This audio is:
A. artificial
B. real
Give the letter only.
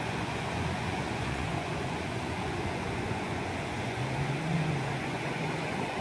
A